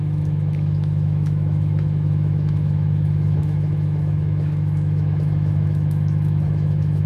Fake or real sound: fake